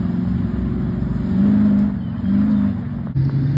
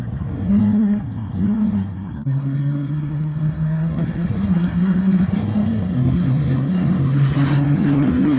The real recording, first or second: first